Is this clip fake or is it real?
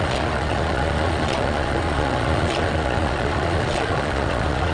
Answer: fake